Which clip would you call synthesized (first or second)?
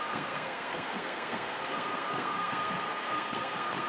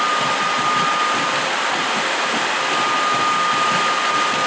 first